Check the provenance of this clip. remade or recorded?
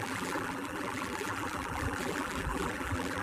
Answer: remade